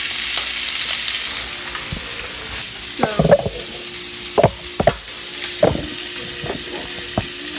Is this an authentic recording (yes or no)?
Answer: yes